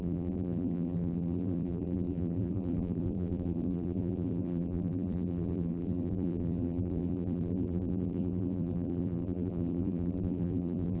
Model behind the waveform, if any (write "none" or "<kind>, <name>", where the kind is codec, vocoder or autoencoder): vocoder, BigVGAN v2